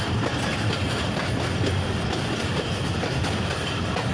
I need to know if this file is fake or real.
real